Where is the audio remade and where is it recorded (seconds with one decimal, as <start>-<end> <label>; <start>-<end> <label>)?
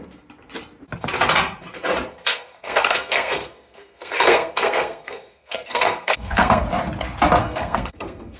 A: 0.0-2.3 recorded; 2.3-6.6 remade; 6.6-7.4 recorded; 7.4-8.4 remade